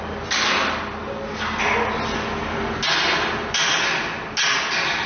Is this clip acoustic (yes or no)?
yes